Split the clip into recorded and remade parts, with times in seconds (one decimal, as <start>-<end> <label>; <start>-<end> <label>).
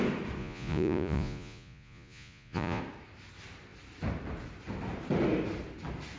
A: 0.0-0.4 recorded; 0.4-2.8 remade; 2.8-6.2 recorded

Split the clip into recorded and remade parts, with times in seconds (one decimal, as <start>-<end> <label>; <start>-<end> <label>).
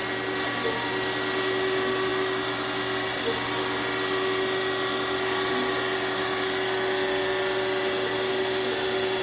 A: 0.0-9.2 recorded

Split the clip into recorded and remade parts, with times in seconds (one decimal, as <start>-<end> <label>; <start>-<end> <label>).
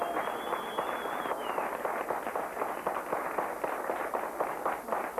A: 0.0-5.2 recorded